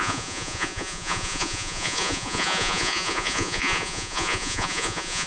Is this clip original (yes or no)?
no